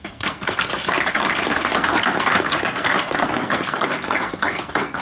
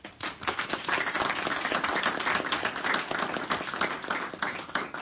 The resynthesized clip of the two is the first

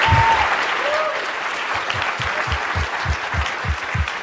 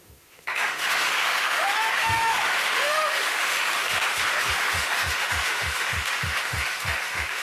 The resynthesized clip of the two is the second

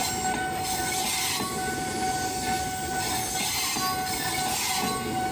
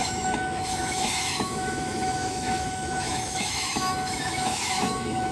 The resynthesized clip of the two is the second